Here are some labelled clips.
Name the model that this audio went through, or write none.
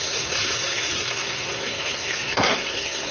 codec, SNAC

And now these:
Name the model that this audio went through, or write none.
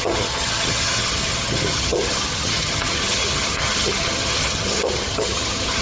vocoder, HiFi-GAN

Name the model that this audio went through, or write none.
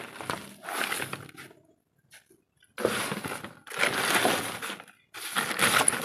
none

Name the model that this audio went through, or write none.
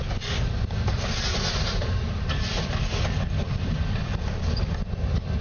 none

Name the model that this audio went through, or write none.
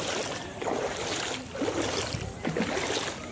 none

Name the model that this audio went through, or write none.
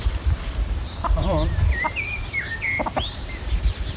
vocoder, BigVGAN v2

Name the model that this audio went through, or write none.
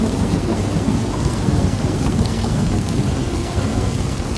codec, SNAC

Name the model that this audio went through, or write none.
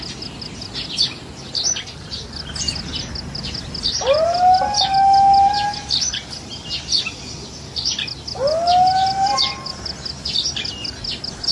none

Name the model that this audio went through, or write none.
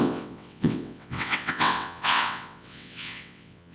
vocoder, WaveNeXt